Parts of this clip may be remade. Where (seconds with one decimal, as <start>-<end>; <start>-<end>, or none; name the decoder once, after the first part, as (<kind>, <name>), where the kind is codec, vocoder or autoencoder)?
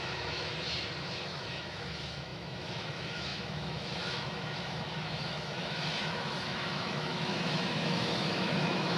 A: 0.0-0.5 (autoencoder, DAC-VAE); 1.2-9.0